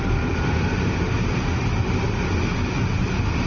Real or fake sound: real